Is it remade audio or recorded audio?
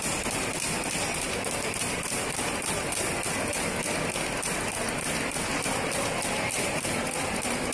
recorded